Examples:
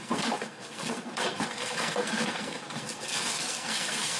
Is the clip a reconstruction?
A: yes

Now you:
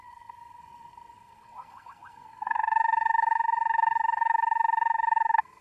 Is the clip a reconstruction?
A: yes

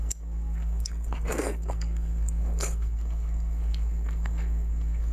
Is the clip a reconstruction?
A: yes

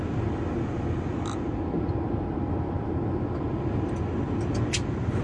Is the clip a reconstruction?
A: no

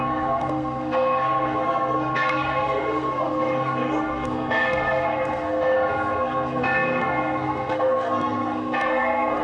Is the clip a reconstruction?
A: yes